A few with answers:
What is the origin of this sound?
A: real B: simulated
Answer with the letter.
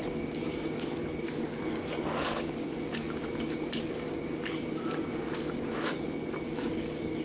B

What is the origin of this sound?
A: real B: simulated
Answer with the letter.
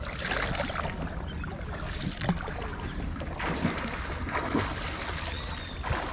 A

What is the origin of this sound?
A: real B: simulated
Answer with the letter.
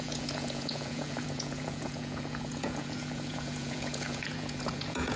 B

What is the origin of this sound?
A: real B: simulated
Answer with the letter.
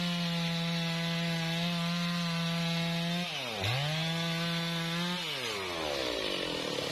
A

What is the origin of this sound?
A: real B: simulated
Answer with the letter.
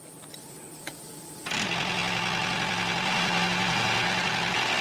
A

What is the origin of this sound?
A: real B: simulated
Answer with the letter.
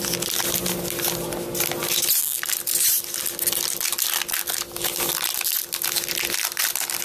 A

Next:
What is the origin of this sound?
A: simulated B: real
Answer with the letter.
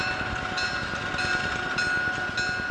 B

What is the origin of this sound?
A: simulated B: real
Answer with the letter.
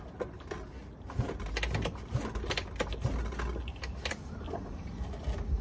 B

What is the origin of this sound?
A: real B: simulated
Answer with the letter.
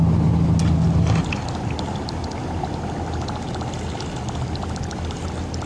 A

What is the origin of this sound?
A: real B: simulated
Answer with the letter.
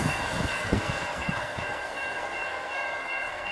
B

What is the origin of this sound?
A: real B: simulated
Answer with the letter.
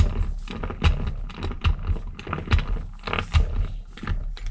A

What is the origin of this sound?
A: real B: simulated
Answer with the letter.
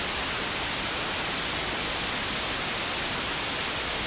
A